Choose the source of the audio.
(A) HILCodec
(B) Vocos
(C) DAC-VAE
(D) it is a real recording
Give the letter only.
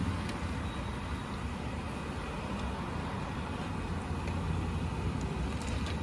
D